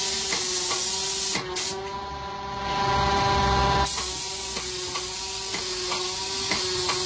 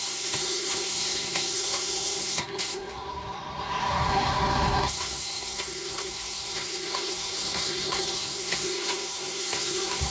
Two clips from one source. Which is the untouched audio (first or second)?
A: first